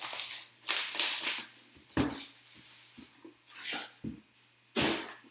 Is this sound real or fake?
real